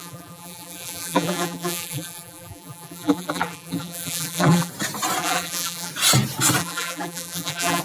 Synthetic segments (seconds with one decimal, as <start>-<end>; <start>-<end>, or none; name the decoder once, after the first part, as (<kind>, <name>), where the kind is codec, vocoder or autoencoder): 0.0-4.7 (vocoder, BigVGAN v2); 5.2-5.9; 6.6-7.8

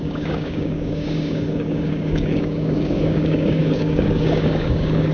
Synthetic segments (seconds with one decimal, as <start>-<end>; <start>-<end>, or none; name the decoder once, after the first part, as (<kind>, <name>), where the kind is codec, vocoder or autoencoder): 0.0-5.1 (codec, DAC)

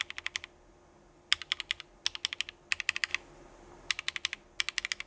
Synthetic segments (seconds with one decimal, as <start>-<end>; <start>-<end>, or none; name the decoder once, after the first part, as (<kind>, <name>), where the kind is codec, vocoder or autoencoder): none

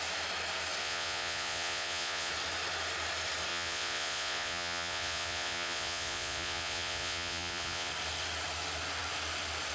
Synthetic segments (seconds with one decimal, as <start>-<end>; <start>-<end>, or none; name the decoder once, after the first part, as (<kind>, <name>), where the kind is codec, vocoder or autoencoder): 0.8-2.3 (vocoder, Vocos); 3.5-7.9

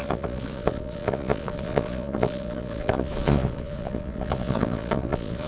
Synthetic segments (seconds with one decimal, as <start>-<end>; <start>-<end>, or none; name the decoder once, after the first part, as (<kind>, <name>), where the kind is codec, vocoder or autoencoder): 0.0-5.5 (vocoder, Vocos)